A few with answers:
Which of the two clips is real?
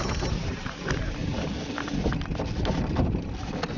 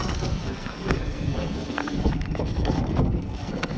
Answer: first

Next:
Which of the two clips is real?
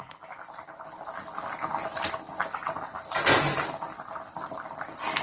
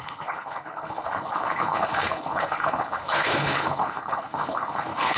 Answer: first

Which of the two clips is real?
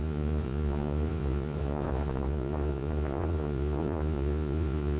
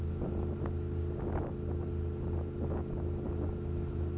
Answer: second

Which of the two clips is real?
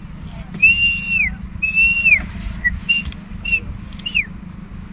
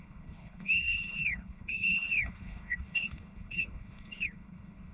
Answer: first